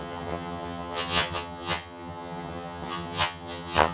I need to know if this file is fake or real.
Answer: fake